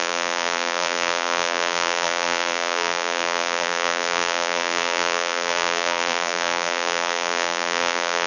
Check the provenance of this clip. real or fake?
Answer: fake